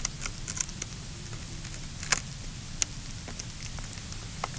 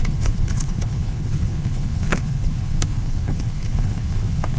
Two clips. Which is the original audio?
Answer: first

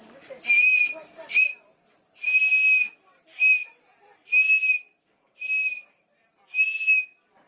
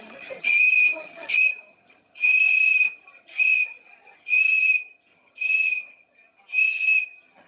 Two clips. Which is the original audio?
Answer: first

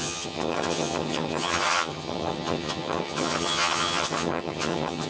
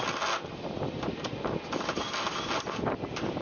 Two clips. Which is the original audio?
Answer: second